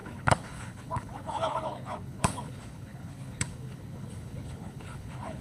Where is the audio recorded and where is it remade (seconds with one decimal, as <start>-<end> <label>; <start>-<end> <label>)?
0.0-5.4 remade